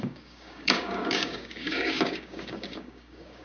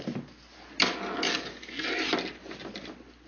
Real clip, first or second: second